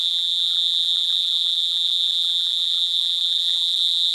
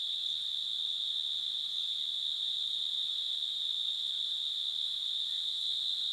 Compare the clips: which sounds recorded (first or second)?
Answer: second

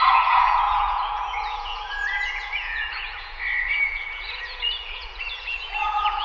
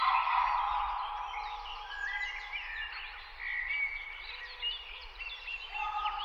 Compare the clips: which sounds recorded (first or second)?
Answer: second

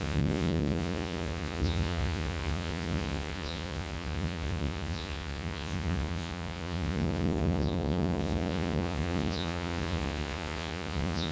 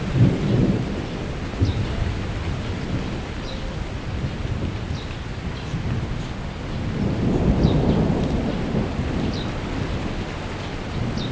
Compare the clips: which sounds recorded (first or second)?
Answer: second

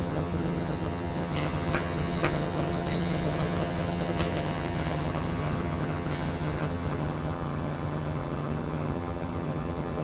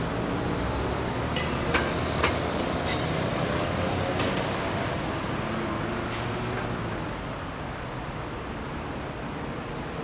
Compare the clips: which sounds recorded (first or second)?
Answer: second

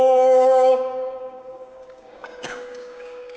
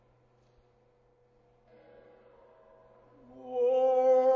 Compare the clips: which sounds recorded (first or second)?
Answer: second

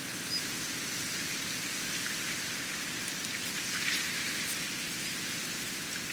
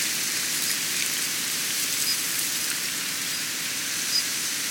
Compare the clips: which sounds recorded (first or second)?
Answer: first